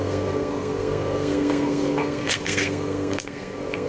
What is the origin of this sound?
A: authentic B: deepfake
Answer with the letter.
B